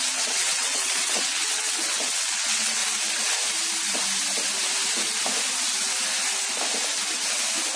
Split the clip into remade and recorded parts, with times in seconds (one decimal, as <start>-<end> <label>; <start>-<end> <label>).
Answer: 0.0-2.8 remade; 2.8-7.8 recorded